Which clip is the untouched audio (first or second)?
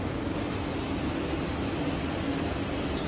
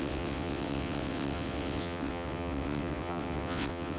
first